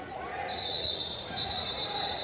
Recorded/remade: remade